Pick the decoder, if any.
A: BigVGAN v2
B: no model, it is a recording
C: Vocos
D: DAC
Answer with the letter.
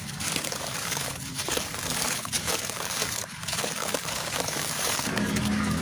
D